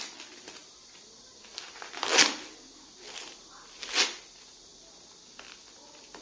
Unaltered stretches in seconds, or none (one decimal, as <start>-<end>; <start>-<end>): 0.0-6.2